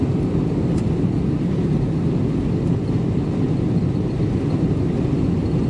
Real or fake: real